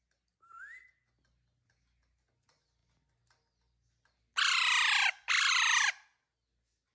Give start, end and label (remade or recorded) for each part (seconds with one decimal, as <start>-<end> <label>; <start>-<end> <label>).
0.0-6.9 recorded